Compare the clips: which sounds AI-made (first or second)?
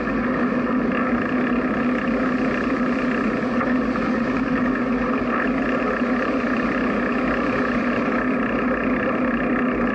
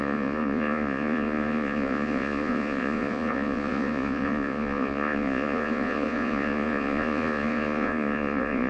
second